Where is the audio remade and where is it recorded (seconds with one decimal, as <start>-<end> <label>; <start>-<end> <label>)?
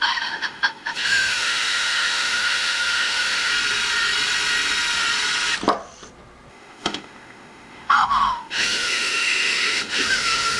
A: 0.0-3.5 remade; 3.5-6.5 recorded; 6.5-10.6 remade